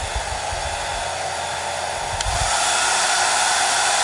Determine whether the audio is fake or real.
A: real